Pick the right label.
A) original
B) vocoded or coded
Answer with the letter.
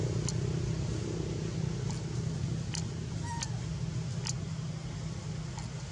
A